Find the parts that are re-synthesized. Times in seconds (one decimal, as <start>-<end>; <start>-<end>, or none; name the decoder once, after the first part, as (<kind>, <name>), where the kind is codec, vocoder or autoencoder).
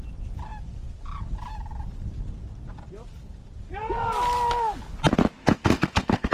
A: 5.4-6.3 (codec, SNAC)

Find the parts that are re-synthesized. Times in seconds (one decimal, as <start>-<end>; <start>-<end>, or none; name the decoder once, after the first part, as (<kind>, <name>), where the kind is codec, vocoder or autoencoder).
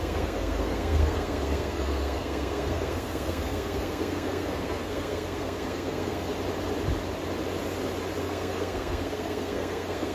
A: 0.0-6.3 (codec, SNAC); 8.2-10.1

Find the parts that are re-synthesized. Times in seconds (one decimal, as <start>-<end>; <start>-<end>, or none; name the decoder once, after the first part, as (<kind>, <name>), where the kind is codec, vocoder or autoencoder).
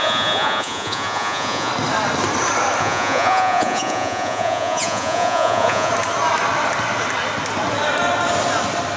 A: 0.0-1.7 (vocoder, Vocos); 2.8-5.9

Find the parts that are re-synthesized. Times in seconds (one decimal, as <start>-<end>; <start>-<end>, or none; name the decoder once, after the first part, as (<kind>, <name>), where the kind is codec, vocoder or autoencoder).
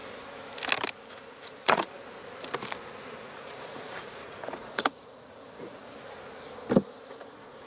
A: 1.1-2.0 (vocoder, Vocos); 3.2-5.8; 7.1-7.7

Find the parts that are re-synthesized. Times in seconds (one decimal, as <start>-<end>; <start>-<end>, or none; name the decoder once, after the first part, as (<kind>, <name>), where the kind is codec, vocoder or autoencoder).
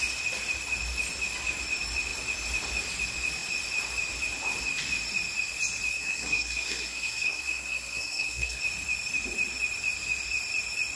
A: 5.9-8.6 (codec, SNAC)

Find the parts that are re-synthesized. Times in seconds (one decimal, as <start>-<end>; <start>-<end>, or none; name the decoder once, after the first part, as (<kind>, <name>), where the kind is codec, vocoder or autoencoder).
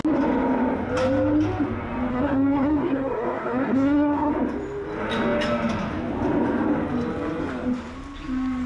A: 2.1-4.3 (codec, SNAC)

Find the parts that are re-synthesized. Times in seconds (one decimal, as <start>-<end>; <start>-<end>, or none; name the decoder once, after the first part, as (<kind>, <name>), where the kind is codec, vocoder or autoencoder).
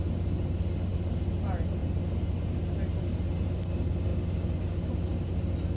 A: none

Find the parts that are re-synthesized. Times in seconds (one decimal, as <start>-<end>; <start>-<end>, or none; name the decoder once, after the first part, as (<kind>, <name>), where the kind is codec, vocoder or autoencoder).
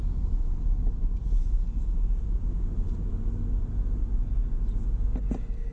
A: none